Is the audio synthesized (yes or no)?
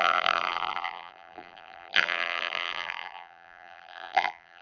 yes